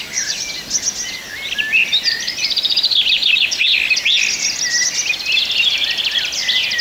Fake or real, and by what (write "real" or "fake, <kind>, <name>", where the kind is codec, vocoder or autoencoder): real